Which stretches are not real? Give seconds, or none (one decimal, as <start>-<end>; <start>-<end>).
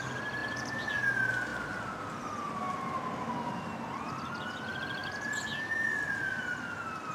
none